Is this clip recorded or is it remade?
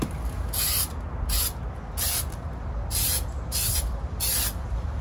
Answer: recorded